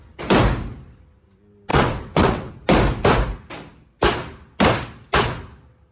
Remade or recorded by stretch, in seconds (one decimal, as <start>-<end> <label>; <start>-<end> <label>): 0.0-1.7 recorded; 1.7-2.5 remade; 2.5-5.9 recorded

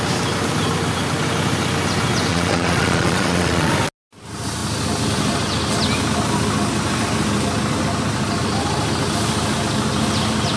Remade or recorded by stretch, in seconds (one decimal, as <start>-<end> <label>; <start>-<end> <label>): 0.0-2.3 recorded; 2.3-3.7 remade; 3.7-10.6 recorded

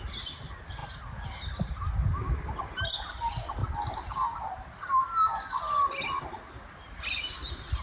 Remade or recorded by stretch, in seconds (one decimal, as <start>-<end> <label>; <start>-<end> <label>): 0.0-7.8 recorded

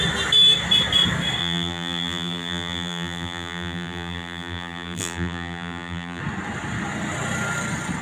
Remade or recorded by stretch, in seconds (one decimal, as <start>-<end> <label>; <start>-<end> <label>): 0.0-1.4 recorded; 1.4-6.2 remade; 6.2-8.0 recorded